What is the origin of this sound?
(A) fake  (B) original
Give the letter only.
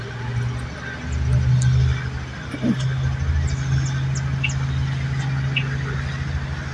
B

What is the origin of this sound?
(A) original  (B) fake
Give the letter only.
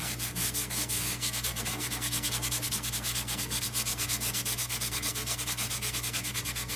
B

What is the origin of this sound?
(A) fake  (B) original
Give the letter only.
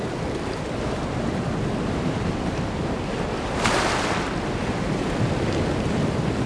B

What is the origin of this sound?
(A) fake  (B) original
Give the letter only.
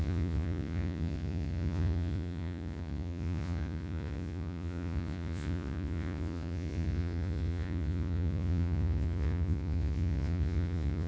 A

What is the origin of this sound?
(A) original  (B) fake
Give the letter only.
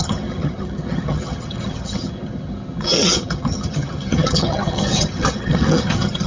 B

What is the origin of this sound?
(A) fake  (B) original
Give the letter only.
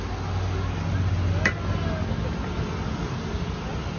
B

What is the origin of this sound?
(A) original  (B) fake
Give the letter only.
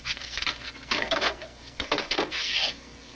B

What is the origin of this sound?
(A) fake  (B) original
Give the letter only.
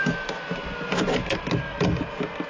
B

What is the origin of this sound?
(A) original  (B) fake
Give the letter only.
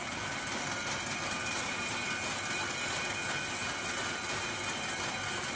A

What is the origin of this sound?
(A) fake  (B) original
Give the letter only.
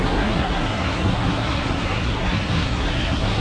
A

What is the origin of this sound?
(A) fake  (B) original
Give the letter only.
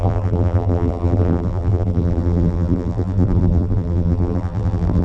A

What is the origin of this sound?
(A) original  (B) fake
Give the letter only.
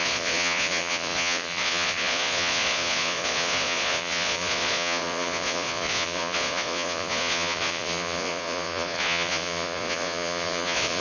B